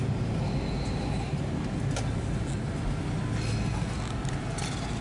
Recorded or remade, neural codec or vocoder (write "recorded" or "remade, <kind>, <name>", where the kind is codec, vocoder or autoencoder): recorded